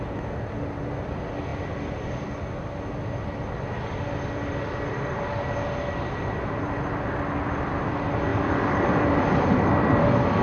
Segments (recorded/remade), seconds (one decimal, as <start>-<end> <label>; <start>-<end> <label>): 0.0-10.4 recorded